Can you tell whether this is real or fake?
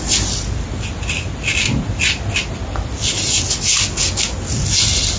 real